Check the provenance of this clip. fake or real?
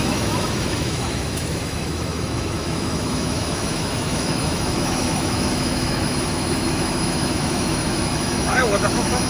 fake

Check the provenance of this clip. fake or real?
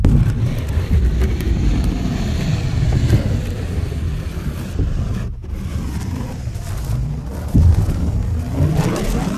real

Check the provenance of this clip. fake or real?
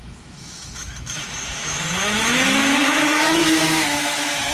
fake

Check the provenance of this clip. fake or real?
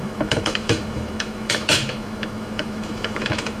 fake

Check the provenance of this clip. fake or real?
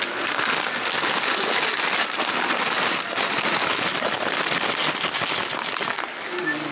real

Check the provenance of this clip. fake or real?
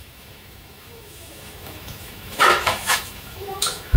fake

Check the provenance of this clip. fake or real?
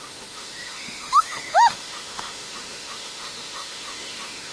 fake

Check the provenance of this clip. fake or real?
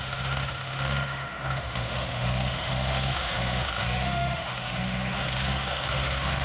fake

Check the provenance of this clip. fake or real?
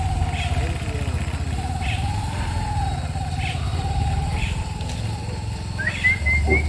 real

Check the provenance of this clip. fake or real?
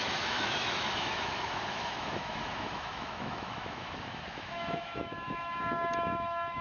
fake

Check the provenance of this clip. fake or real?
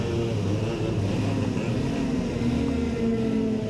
real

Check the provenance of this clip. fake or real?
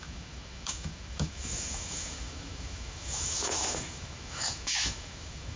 fake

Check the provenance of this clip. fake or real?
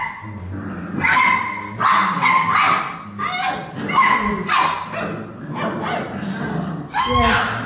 real